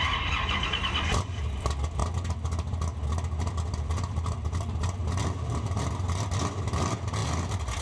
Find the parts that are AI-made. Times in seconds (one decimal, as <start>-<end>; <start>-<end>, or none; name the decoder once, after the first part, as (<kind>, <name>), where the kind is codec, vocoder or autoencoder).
0.0-2.0 (vocoder, BigVGAN v2); 3.5-5.0; 6.6-7.2